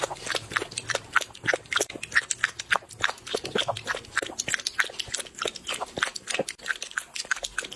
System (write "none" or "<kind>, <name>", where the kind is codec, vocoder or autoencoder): none